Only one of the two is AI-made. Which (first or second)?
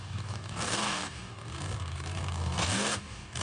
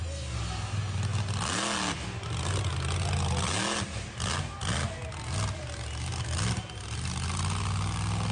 first